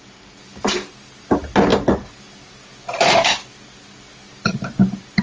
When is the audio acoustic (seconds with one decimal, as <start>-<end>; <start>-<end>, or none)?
0.0-5.2

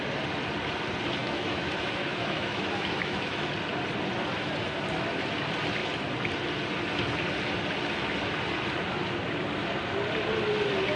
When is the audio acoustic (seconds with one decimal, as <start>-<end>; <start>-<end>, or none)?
0.0-1.2; 3.5-11.0

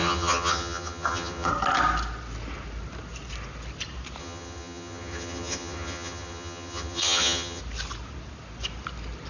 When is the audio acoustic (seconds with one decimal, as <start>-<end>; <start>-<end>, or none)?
1.5-4.2; 7.6-9.3

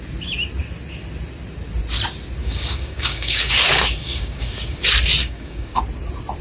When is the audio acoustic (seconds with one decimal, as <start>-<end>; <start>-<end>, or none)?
0.0-2.4; 4.8-5.2; 5.8-6.4

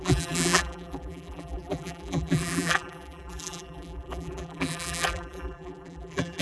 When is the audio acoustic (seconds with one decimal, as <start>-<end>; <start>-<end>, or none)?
none

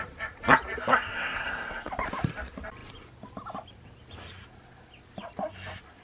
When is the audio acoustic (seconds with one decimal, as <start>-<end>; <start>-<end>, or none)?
0.0-0.9; 1.9-6.0